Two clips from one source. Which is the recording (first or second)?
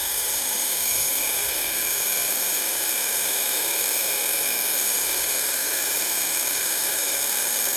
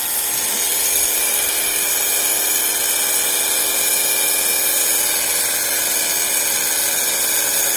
second